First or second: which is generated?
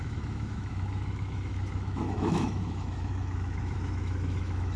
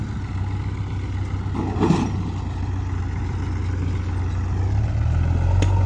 first